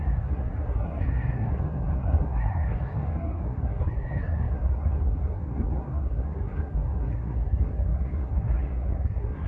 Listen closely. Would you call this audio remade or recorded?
remade